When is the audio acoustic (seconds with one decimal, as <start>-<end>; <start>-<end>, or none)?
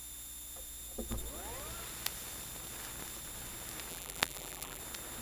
0.0-3.9; 4.8-5.2